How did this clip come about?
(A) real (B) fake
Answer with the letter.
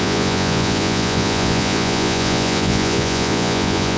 B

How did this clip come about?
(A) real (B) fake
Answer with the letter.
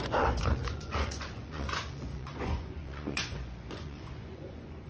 B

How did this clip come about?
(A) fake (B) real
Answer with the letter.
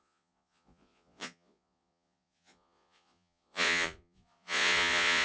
A